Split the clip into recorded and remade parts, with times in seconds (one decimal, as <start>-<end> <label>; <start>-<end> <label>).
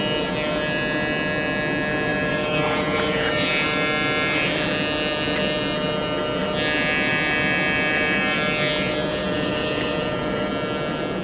0.0-2.1 recorded; 2.1-3.5 remade; 3.5-9.0 recorded; 9.0-10.5 remade; 10.5-11.2 recorded